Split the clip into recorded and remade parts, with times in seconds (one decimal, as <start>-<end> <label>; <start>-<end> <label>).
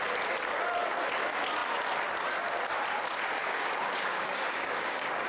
0.0-3.5 recorded; 3.5-5.3 remade